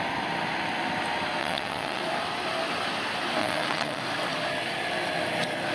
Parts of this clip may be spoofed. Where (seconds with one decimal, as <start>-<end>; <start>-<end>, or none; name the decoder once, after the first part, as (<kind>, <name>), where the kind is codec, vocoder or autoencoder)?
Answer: 1.4-2.0 (vocoder, WaveNeXt); 3.4-4.0